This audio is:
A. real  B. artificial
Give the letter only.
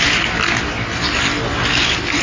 A